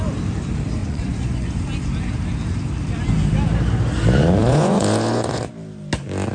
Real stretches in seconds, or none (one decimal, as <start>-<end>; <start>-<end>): 0.0-0.8; 1.6-4.4; 5.5-6.3